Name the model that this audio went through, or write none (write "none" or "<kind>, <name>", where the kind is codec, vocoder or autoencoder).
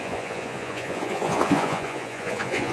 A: vocoder, Vocos